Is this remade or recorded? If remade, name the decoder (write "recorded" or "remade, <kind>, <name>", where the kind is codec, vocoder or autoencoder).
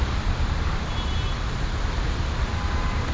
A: recorded